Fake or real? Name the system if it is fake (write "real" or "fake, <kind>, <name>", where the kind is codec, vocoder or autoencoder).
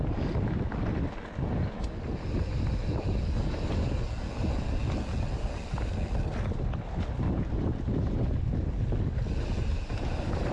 real